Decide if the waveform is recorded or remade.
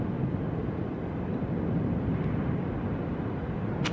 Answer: recorded